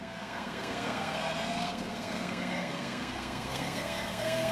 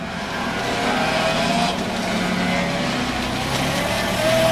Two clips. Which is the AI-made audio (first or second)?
first